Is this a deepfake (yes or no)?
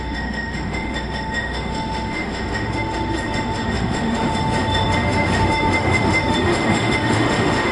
yes